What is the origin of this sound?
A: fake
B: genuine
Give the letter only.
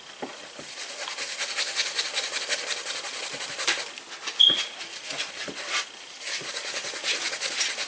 B